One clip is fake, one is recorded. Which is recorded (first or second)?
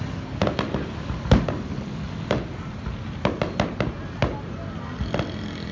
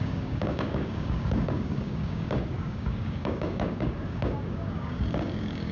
first